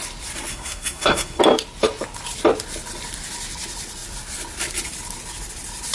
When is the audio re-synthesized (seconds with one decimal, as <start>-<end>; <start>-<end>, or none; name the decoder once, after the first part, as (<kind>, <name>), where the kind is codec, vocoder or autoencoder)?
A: 0.5-1.4 (codec, SNAC)